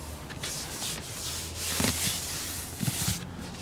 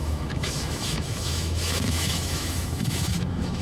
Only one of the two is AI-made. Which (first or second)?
second